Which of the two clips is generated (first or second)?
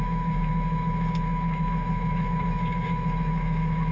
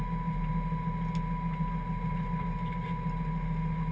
first